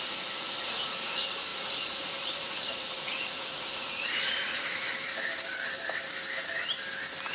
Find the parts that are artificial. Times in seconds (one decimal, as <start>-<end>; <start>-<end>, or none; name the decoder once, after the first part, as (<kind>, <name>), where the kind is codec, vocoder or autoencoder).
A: 0.0-4.9 (vocoder, Vocos)